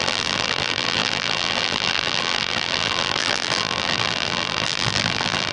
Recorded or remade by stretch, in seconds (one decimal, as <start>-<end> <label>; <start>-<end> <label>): 0.0-5.5 remade